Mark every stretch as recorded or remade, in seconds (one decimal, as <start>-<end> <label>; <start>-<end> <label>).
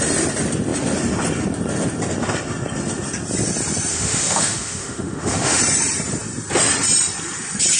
0.0-3.9 recorded; 3.9-5.6 remade; 5.6-7.8 recorded